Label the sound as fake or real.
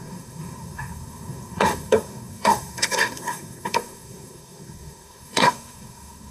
fake